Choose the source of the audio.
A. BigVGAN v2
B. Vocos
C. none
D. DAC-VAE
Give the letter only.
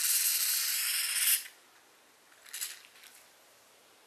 C